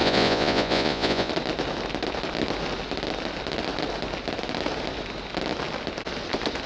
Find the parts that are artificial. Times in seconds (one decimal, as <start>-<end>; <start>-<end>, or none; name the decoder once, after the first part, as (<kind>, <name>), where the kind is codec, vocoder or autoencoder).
0.0-1.3 (vocoder, Vocos)